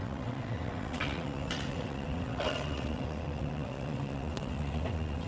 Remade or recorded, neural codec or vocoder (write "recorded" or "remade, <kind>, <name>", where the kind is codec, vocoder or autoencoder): remade, vocoder, WaveNeXt